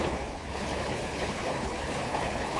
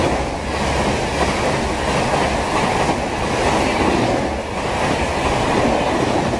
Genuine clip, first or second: second